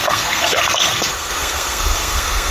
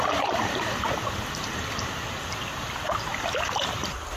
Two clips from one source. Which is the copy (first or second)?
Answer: first